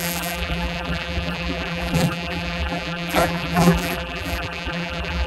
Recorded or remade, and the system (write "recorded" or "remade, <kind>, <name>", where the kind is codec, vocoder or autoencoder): remade, vocoder, BigVGAN v2